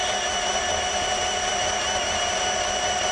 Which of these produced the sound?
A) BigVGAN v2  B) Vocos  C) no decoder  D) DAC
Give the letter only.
A